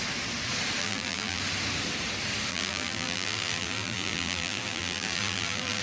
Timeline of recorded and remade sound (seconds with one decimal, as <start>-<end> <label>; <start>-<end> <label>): 0.0-0.8 recorded; 0.8-1.4 remade; 1.4-2.5 recorded; 2.5-5.8 remade